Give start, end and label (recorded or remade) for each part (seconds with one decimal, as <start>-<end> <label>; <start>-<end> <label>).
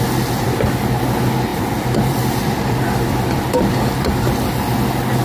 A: 0.0-1.5 recorded; 1.5-4.6 remade; 4.6-5.2 recorded